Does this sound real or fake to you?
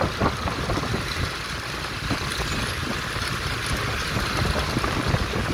real